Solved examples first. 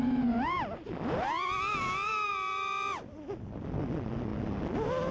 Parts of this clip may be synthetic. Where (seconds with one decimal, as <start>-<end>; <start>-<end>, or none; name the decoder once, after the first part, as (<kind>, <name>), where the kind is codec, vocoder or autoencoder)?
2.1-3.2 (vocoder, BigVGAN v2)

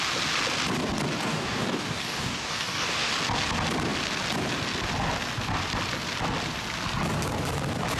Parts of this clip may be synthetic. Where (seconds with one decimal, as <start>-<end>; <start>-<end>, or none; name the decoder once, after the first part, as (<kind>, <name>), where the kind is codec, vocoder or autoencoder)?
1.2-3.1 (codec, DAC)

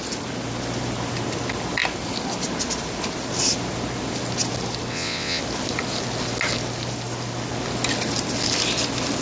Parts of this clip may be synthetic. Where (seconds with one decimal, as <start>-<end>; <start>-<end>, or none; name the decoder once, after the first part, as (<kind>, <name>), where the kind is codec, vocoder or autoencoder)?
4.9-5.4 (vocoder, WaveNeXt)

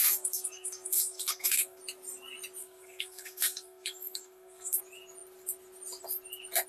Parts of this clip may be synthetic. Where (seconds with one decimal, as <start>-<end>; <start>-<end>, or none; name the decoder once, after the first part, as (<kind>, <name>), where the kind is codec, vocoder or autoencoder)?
0.0-1.8 (codec, SNAC); 2.6-4.8

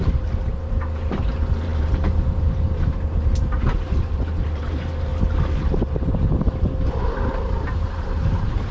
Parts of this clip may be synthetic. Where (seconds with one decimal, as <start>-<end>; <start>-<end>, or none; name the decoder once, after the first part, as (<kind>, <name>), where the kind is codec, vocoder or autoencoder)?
0.0-5.1 (vocoder, BigVGAN v2); 7.2-8.7

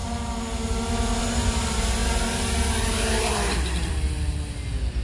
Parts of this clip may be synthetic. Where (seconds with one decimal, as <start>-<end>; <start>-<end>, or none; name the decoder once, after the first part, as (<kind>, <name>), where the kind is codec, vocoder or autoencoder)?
none

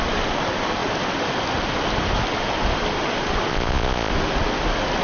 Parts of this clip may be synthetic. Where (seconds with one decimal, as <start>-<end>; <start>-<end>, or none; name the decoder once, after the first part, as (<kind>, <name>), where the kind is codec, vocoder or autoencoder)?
3.5-4.1 (vocoder, Vocos)

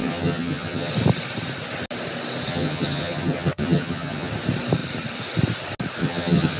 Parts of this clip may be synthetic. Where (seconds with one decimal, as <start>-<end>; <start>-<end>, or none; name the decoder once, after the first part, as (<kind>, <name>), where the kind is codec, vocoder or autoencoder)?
0.0-0.9 (vocoder, HiFi-GAN); 2.5-4.3; 6.0-6.6